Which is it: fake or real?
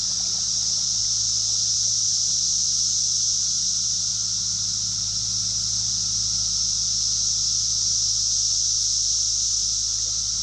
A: real